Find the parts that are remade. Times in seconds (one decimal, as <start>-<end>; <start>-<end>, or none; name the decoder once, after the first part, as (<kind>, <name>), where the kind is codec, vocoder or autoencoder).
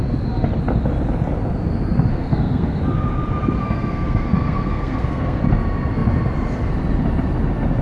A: 2.1-2.8 (codec, SNAC); 3.6-5.4